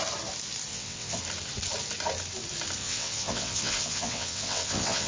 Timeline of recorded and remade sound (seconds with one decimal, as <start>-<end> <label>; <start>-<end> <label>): 0.0-0.7 recorded; 0.7-1.2 remade; 1.2-2.8 recorded; 2.8-5.1 remade